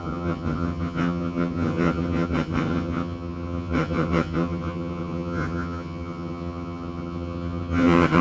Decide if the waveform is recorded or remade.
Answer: remade